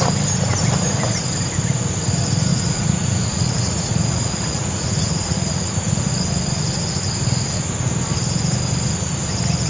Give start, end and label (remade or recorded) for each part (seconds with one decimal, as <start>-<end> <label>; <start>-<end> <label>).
0.0-2.5 recorded; 2.5-6.1 remade; 6.1-9.7 recorded